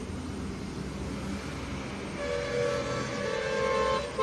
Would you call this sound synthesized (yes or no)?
no